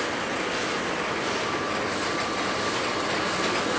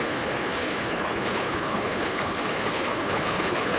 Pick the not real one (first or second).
second